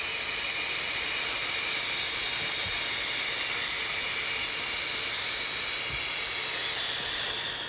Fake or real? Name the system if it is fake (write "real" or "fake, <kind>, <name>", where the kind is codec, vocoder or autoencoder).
real